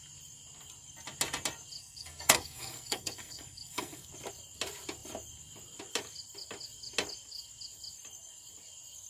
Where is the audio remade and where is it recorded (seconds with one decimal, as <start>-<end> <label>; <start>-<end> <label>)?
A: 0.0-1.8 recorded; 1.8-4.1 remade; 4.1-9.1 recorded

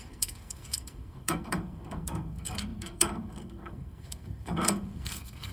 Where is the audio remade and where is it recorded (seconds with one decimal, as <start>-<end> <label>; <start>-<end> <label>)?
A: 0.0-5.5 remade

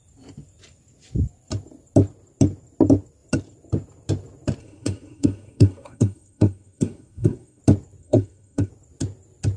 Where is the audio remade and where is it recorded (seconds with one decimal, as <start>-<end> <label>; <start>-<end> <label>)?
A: 0.0-4.6 recorded; 4.6-7.6 remade; 7.6-8.0 recorded; 8.0-8.7 remade; 8.7-9.6 recorded

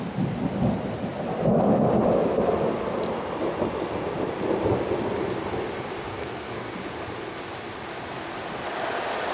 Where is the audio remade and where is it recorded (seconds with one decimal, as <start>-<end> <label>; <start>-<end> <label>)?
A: 0.0-6.1 recorded; 6.1-6.8 remade; 6.8-9.3 recorded

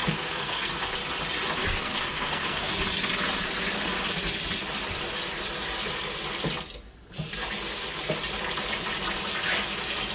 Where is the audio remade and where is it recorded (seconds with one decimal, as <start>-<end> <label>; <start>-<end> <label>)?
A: 0.0-0.7 remade; 0.7-1.6 recorded; 1.6-2.7 remade; 2.7-10.1 recorded

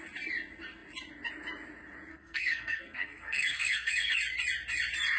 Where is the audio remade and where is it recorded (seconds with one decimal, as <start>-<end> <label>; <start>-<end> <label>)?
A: 0.0-2.1 recorded; 2.1-4.1 remade; 4.1-5.2 recorded